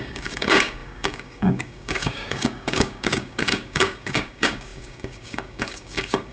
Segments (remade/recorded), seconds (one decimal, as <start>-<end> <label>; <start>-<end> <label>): 0.0-6.3 remade